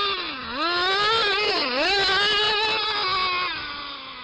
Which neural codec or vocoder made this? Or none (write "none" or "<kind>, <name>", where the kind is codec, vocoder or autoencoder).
none